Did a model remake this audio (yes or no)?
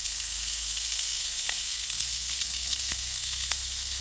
yes